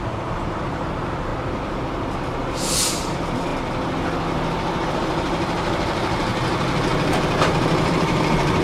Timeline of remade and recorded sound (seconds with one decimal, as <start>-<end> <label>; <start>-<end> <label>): 0.0-1.3 remade; 1.3-2.9 recorded; 2.9-3.5 remade; 3.5-4.9 recorded; 4.9-8.6 remade